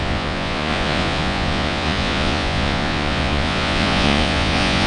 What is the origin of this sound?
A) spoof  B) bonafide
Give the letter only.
A